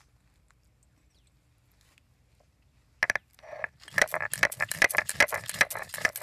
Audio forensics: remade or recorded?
recorded